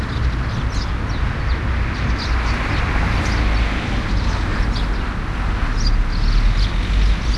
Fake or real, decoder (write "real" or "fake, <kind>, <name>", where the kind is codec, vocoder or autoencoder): real